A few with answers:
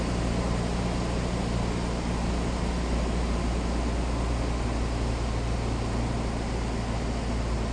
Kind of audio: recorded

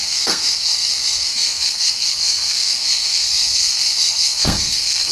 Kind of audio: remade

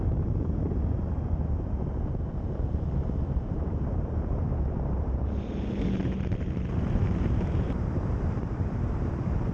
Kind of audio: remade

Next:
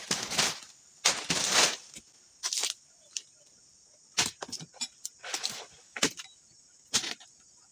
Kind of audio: recorded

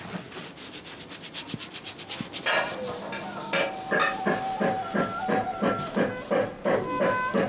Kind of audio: recorded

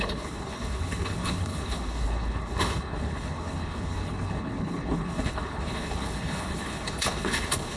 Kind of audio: remade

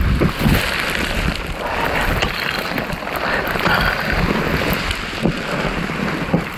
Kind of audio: recorded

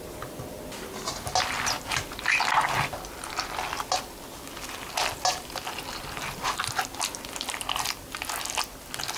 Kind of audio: recorded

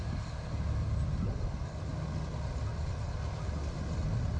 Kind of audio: recorded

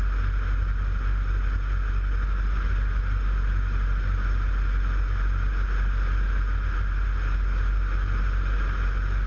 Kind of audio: recorded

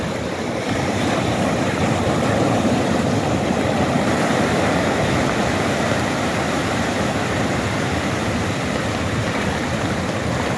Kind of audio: remade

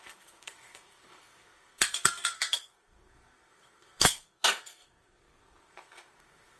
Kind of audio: remade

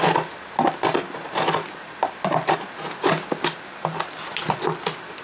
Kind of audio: recorded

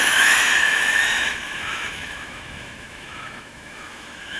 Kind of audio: remade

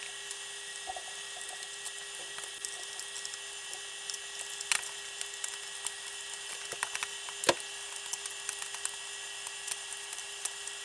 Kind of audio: recorded